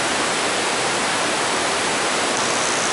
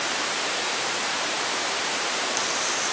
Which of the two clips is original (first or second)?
first